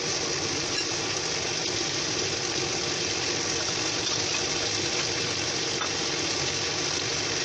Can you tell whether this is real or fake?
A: real